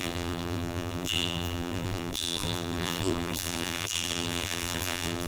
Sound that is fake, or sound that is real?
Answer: fake